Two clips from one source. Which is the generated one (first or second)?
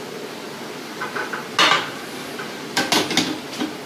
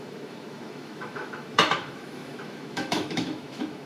second